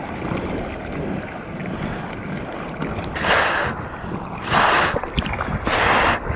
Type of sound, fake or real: real